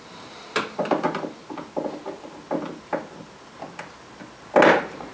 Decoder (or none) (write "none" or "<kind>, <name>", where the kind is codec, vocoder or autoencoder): none